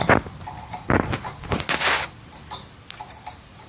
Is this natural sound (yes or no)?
yes